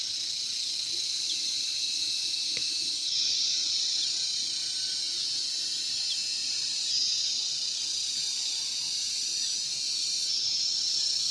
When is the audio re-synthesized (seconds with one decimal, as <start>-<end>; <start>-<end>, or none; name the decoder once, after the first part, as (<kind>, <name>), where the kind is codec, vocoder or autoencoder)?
1.6-4.0 (vocoder, BigVGAN v2)